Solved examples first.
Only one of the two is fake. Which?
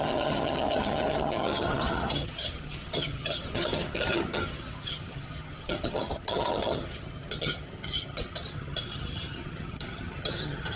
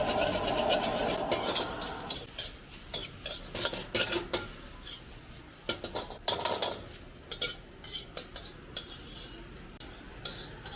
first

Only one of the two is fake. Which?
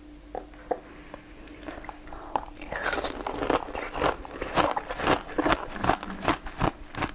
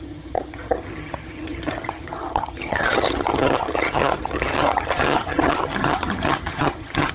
second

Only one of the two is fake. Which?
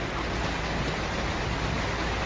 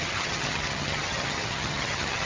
second